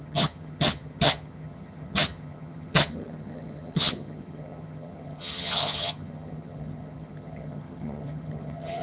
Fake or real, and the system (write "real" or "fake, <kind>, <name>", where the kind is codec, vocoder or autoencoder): fake, vocoder, HiFi-GAN